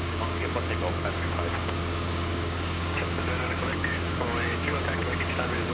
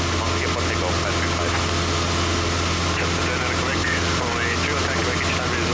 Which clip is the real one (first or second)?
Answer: second